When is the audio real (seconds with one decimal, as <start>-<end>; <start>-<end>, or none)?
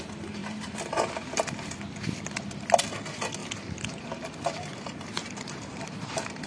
0.0-0.4; 1.8-3.4